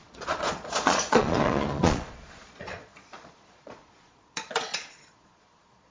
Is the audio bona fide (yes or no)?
no